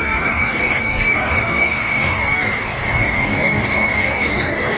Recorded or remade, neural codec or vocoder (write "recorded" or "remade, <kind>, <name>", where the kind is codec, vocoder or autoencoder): remade, codec, DAC